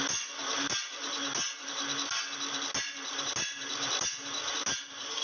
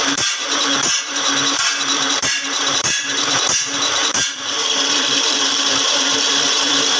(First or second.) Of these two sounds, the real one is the first